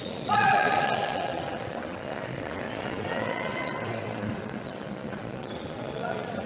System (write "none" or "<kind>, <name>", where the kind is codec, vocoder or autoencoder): vocoder, Vocos